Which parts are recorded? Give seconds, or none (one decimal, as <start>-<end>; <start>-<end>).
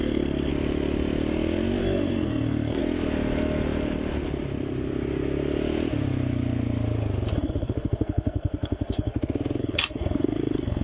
0.5-1.8; 2.8-7.3; 9.1-9.6